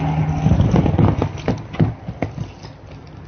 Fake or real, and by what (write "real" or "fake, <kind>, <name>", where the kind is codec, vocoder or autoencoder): real